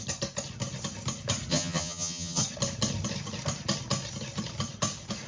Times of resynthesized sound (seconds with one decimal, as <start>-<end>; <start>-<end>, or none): 1.5-2.4